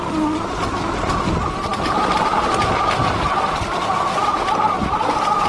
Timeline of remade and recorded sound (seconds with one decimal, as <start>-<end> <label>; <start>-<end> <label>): 0.0-5.5 recorded